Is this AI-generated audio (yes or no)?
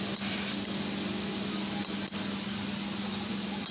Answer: no